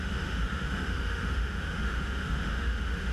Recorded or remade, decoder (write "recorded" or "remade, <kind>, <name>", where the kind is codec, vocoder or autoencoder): remade, autoencoder, DAC-VAE